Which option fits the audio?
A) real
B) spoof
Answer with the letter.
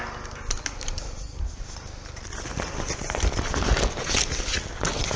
A